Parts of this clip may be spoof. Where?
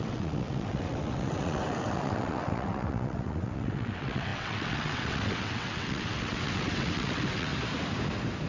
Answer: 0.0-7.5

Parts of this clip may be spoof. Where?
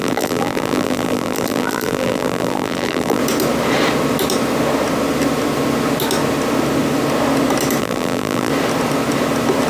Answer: 0.0-3.2; 7.8-8.5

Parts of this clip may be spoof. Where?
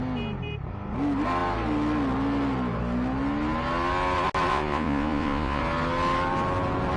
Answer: 4.5-5.6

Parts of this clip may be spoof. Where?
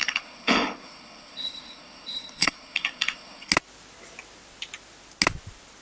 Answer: 0.0-3.5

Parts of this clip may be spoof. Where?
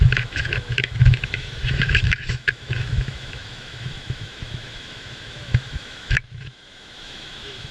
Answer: 0.0-7.7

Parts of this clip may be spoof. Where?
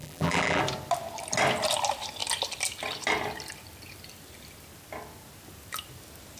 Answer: 0.0-0.6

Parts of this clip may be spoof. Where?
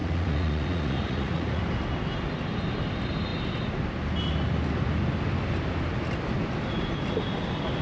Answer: 0.0-1.6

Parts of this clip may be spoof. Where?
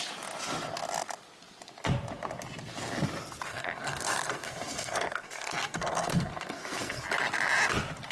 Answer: 3.5-7.0